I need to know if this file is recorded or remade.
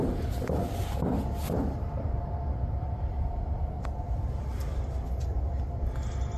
recorded